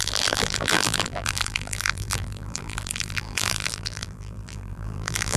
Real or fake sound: fake